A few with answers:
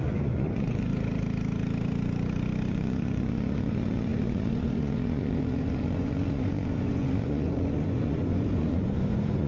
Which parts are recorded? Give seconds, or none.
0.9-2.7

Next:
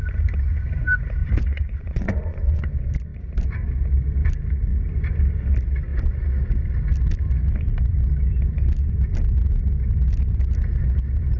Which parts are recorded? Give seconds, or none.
0.0-1.2; 2.6-11.4

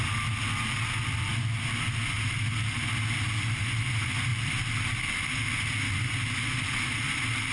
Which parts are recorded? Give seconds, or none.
0.0-7.5